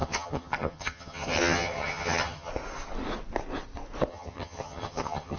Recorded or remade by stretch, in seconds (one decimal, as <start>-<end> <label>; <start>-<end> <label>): 0.0-2.5 remade; 2.5-4.1 recorded; 4.1-5.4 remade